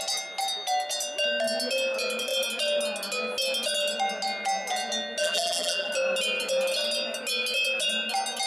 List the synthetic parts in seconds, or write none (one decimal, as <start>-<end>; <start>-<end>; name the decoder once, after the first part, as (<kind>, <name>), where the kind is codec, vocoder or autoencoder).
5.2-5.9 (vocoder, BigVGAN v2)